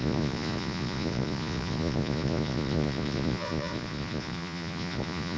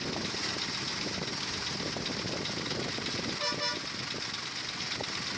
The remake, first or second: first